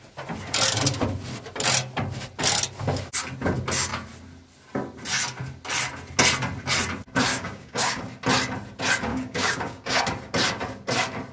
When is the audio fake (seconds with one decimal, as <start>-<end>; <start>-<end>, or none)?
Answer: 7.3-8.0; 9.1-10.0